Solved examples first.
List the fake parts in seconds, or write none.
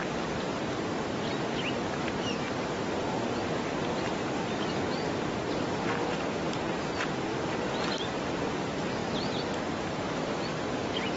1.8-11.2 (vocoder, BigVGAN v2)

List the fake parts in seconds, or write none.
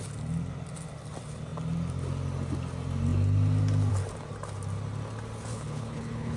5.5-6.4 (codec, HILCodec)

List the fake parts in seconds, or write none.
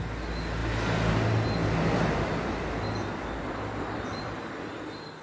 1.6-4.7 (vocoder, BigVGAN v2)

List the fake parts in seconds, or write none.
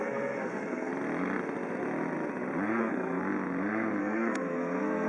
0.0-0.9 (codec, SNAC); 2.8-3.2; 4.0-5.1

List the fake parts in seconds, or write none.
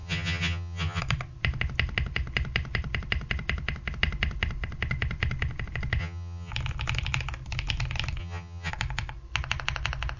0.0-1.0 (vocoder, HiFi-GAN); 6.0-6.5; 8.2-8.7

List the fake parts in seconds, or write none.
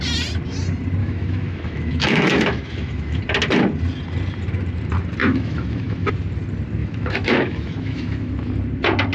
1.0-3.2 (autoencoder, DAC-VAE); 5.2-6.1; 6.8-8.3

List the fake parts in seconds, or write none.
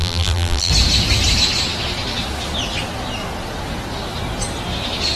0.0-0.7 (vocoder, BigVGAN v2)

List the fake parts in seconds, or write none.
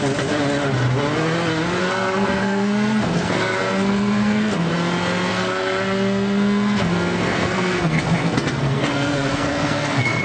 1.8-4.7 (codec, SNAC); 5.3-10.2